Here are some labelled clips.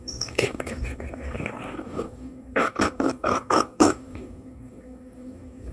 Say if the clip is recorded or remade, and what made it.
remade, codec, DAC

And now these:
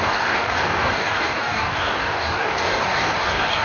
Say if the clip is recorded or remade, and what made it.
remade, codec, DAC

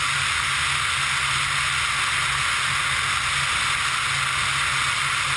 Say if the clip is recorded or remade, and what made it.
recorded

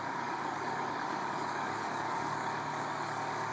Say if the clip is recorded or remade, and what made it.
remade, codec, DAC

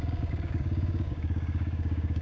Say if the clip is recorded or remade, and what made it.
remade, codec, DAC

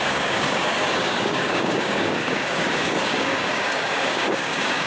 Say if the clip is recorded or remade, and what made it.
remade, codec, DAC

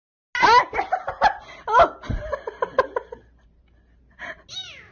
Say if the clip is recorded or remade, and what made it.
recorded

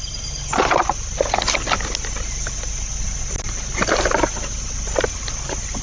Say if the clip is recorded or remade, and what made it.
recorded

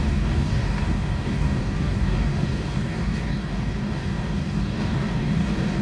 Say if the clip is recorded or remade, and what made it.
remade, codec, DAC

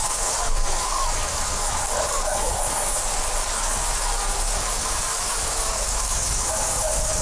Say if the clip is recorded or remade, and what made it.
remade, codec, DAC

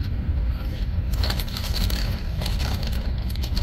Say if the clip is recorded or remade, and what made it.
remade, codec, DAC